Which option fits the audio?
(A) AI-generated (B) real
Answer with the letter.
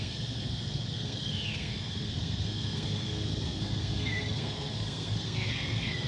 A